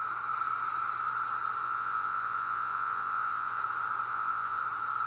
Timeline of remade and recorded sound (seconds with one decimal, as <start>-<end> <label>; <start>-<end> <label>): 0.0-1.6 recorded; 1.6-3.6 remade; 3.6-4.1 recorded; 4.1-4.6 remade; 4.6-5.1 recorded

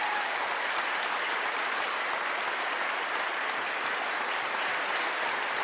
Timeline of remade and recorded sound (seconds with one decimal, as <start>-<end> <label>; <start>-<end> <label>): 0.0-0.5 remade; 0.5-5.6 recorded

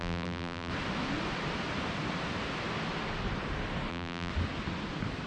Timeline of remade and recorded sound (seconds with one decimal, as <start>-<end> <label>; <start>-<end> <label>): 0.0-0.7 remade; 0.7-3.9 recorded; 3.9-4.3 remade; 4.3-5.3 recorded

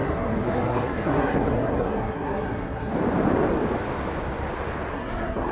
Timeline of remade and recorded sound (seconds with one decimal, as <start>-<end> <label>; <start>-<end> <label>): 0.0-2.9 remade; 2.9-4.9 recorded; 4.9-5.5 remade